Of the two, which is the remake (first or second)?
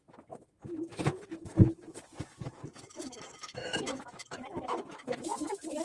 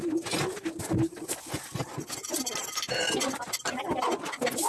first